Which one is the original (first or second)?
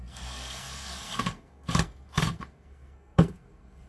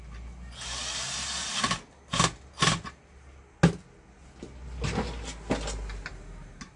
second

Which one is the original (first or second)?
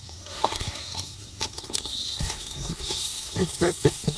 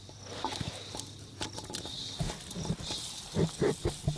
second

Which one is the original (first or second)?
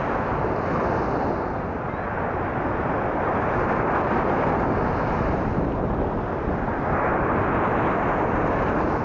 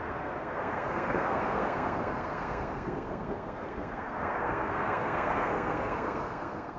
first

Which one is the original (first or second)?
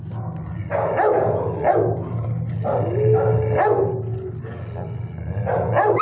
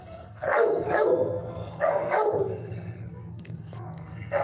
first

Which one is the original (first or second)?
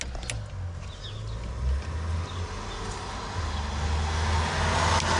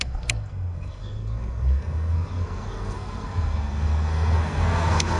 first